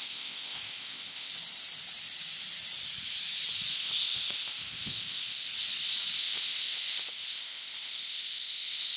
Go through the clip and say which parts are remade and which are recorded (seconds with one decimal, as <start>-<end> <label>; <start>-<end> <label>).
0.0-1.3 remade; 1.3-3.7 recorded; 3.7-5.5 remade; 5.5-6.2 recorded; 6.2-9.0 remade